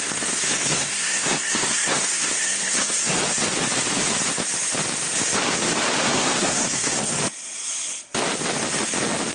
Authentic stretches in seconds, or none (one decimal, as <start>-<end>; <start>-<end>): 3.2-6.0; 7.2-9.3

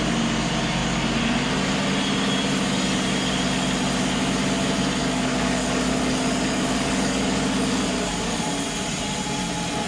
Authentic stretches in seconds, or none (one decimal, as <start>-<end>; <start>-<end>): 0.0-5.0; 8.5-9.9

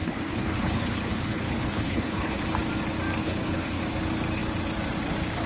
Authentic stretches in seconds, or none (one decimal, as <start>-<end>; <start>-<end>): 2.4-3.2; 3.8-5.5

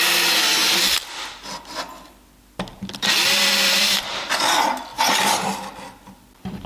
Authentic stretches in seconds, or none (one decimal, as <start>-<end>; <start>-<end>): 0.0-4.9

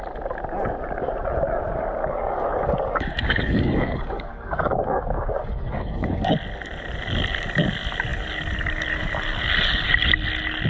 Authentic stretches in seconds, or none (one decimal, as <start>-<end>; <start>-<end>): 0.0-2.0; 6.3-10.7

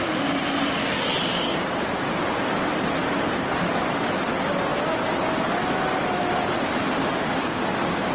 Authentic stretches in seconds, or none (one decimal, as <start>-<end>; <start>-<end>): 0.0-1.5; 2.2-8.1

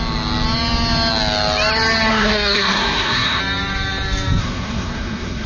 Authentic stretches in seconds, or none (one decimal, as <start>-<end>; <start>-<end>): 0.0-2.1; 3.4-4.4

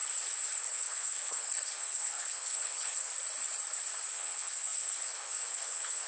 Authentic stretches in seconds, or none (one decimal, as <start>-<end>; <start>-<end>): 0.0-0.6; 3.1-4.1